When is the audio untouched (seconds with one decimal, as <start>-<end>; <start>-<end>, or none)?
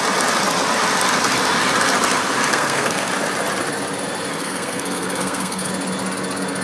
0.0-2.5; 3.1-4.3; 5.7-6.6